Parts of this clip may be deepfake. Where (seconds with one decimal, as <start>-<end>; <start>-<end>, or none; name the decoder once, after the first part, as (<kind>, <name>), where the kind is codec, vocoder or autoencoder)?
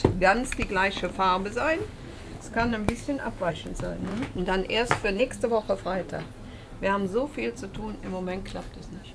2.7-3.5 (autoencoder, DAC-VAE); 4.1-5.2